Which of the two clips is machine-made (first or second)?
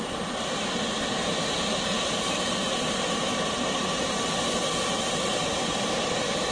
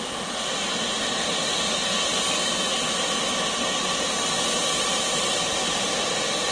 first